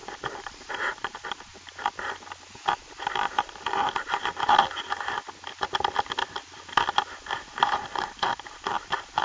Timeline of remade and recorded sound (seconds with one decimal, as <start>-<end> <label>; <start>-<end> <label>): 0.0-1.5 remade; 1.5-2.8 recorded; 2.8-4.2 remade; 4.2-7.2 recorded; 7.2-9.2 remade